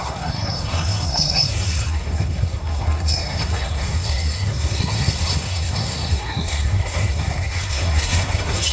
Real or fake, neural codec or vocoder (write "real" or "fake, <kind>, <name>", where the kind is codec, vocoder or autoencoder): fake, codec, SNAC